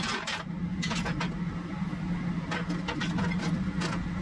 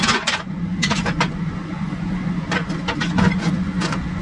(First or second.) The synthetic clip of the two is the second